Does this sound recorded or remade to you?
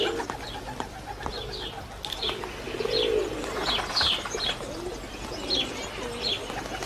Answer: recorded